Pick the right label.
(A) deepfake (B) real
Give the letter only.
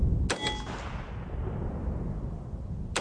B